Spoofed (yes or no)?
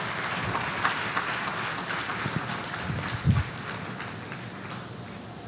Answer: no